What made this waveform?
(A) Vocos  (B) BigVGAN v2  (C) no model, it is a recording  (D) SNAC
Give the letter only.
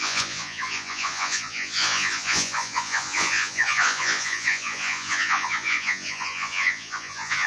A